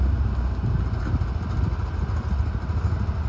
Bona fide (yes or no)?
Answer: yes